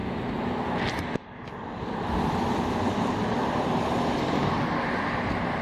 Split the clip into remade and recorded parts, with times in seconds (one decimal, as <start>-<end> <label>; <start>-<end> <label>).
0.0-5.6 recorded